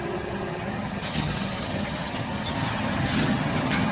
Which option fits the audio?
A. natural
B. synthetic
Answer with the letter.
B